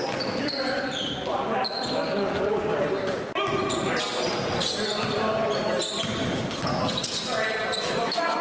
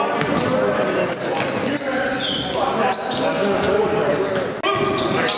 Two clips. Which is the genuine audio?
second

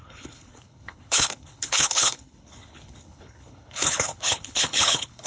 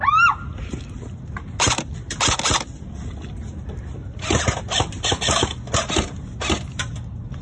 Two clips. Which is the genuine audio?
second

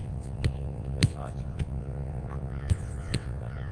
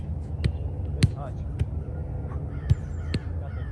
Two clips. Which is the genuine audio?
second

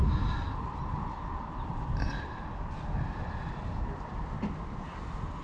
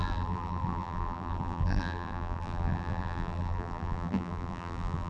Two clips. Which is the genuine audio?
first